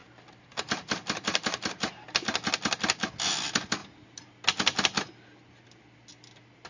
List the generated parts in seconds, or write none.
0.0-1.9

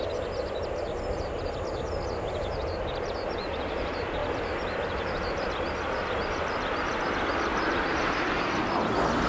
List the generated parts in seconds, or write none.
7.5-8.3